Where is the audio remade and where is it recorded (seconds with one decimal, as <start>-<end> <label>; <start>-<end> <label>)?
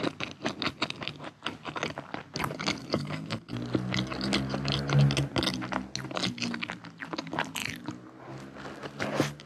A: 0.0-2.8 recorded; 2.8-3.5 remade; 3.5-9.5 recorded